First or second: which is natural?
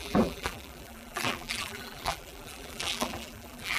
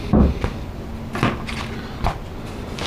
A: second